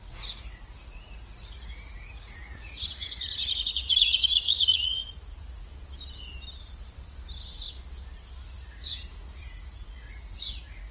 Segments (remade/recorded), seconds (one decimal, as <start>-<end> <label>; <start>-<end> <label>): 0.0-5.7 remade; 5.7-8.4 recorded; 8.4-10.9 remade